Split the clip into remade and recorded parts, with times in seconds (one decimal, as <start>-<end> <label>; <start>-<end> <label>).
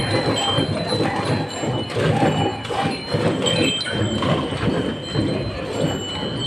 0.0-6.5 recorded